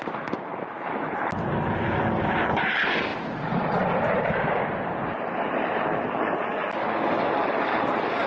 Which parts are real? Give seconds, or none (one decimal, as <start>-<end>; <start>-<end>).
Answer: 0.0-8.3